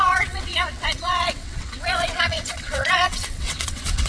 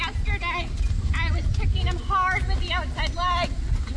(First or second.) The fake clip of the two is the first